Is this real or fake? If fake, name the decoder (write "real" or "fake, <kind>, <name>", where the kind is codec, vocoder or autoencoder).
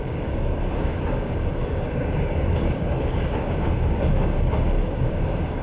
fake, codec, DAC